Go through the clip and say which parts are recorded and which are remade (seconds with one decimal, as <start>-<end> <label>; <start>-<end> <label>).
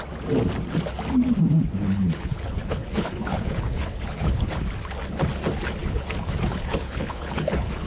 0.0-1.4 recorded; 1.4-4.6 remade; 4.6-5.8 recorded; 5.8-7.9 remade